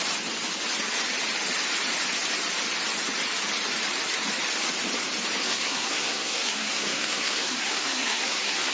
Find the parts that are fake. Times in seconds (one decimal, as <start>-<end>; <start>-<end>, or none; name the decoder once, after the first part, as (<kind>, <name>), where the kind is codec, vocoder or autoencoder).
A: 5.4-8.7 (codec, SNAC)